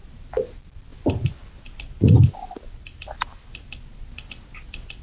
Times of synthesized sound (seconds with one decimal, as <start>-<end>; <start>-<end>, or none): none